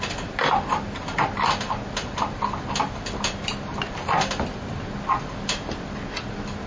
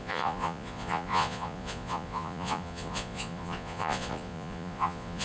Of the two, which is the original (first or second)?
first